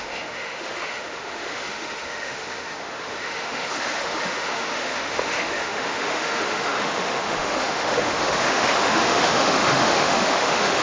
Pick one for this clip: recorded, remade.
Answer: remade